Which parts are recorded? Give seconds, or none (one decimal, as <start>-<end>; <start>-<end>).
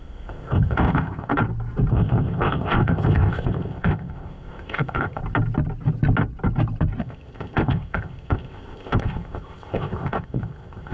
1.3-1.9; 5.2-7.0